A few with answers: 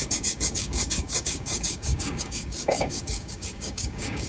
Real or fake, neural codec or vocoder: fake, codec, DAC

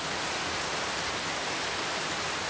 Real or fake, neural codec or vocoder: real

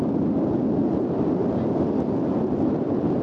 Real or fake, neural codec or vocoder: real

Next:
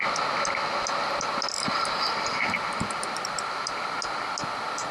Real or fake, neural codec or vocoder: real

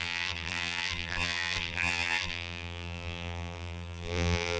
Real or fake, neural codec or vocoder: fake, vocoder, BigVGAN v2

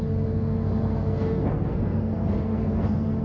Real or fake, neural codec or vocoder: fake, codec, SNAC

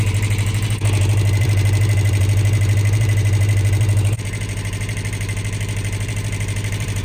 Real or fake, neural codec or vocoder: fake, vocoder, BigVGAN v2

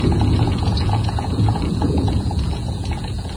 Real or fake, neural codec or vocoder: fake, vocoder, Vocos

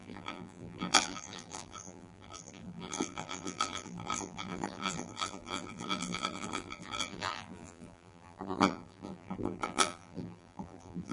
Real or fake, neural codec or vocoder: fake, vocoder, BigVGAN v2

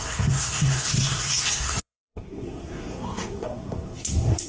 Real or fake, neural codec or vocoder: fake, codec, SNAC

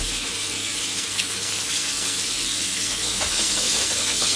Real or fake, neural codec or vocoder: fake, codec, SNAC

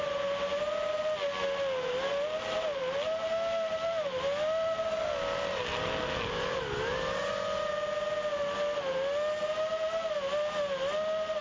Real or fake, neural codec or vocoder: real